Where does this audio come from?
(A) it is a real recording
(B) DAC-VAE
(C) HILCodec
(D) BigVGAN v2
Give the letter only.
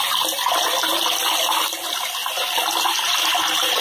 A